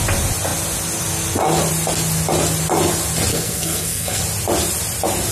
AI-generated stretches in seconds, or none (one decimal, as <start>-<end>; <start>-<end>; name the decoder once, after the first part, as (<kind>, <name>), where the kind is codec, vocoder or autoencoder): 3.3-4.2 (codec, SNAC)